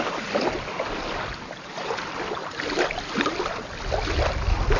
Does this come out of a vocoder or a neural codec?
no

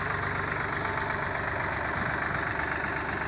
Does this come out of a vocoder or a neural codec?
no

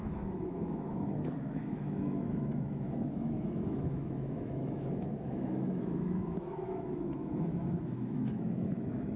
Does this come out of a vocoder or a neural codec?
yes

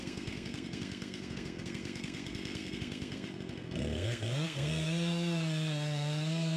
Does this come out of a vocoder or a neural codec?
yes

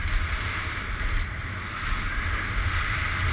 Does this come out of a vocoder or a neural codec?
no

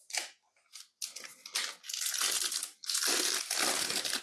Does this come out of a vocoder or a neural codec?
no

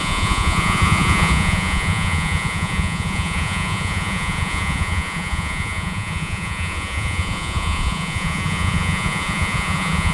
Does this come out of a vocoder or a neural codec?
yes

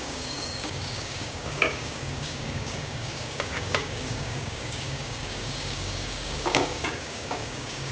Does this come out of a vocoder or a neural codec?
yes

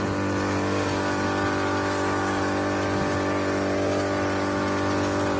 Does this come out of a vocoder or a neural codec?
no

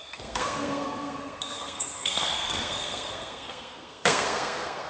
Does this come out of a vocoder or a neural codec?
yes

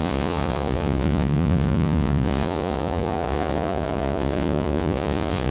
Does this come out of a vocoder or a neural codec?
yes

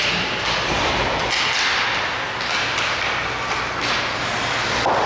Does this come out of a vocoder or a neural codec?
no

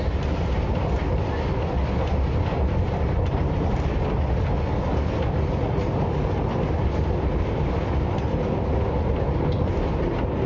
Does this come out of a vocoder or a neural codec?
no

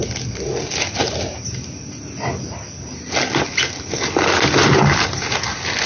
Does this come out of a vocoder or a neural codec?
no